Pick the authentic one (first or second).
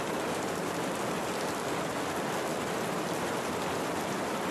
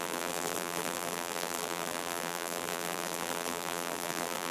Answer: first